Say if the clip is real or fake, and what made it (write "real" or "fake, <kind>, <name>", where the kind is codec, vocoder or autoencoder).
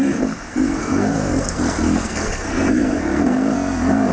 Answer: fake, codec, SNAC